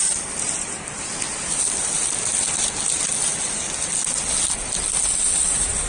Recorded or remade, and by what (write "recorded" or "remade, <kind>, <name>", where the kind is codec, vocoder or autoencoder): recorded